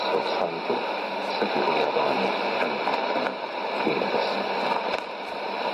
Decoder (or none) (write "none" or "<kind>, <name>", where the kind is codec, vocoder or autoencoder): vocoder, BigVGAN v2